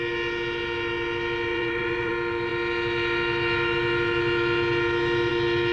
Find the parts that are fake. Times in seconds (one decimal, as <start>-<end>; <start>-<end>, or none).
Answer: 1.5-2.1